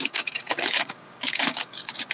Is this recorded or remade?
remade